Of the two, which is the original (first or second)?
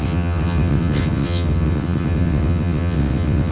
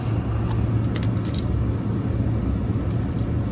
second